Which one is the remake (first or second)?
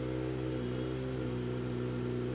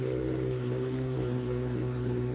second